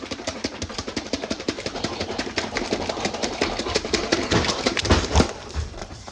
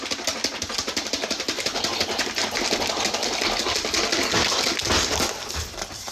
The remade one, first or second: first